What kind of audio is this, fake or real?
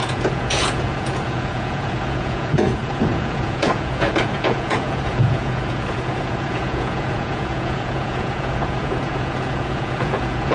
fake